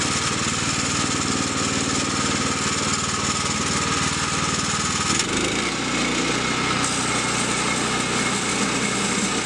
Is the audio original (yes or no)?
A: yes